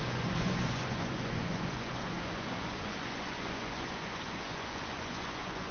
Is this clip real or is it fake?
fake